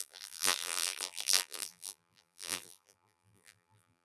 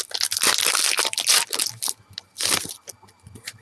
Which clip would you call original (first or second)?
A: second